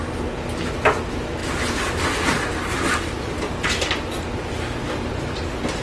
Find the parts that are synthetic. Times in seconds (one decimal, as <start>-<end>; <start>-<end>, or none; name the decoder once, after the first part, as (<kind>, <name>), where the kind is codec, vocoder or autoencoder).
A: 1.4-2.3 (vocoder, BigVGAN v2)